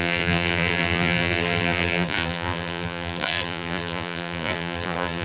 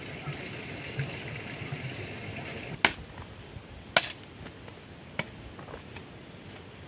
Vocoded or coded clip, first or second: first